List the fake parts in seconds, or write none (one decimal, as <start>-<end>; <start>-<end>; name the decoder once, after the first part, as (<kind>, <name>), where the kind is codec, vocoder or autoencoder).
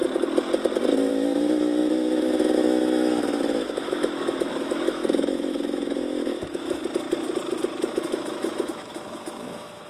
1.1-6.8 (autoencoder, DAC-VAE); 7.9-9.9